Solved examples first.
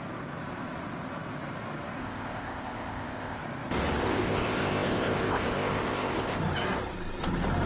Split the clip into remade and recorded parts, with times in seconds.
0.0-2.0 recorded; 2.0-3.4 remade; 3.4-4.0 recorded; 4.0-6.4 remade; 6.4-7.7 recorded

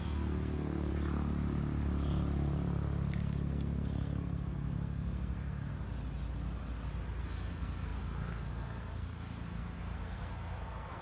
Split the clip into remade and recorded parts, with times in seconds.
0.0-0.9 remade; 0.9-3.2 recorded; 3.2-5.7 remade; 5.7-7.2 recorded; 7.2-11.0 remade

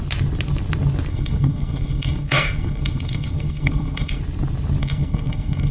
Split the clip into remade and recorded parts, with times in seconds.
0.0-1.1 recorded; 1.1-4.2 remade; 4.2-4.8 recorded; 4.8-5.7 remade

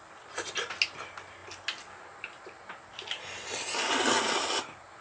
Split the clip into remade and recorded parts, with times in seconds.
0.0-5.0 recorded

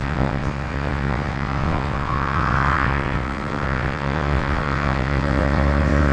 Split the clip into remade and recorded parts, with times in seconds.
0.0-6.1 remade

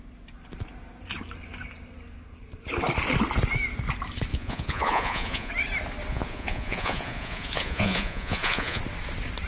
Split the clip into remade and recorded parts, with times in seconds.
0.0-4.3 recorded; 4.3-5.5 remade; 5.5-6.1 recorded; 6.1-8.8 remade; 8.8-9.5 recorded

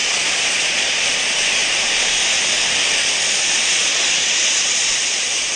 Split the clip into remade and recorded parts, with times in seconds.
0.0-1.0 remade; 1.0-3.9 recorded; 3.9-5.6 remade

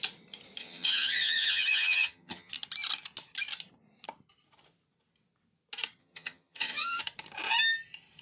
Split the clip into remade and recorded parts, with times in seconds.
0.0-0.6 recorded; 0.6-2.5 remade; 2.5-6.0 recorded; 6.0-7.0 remade; 7.0-8.2 recorded